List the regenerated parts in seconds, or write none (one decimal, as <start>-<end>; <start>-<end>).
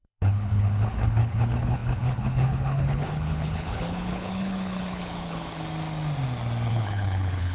0.0-5.6; 6.7-7.5